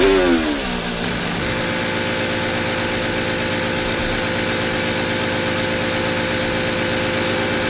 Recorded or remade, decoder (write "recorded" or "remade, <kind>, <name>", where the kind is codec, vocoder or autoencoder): recorded